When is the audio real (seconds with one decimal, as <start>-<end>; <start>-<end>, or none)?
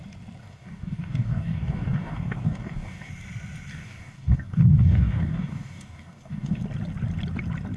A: 0.0-0.4; 3.1-3.7; 6.6-7.8